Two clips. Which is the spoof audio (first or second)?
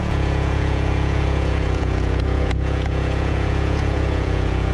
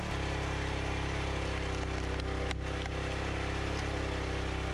first